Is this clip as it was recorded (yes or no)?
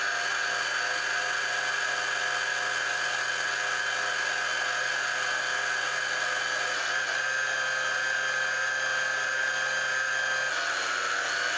yes